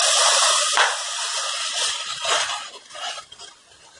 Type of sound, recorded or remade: recorded